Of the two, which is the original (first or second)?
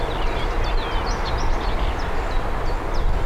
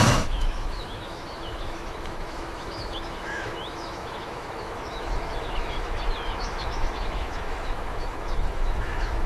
first